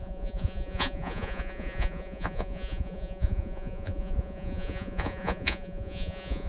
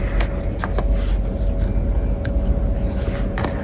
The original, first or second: second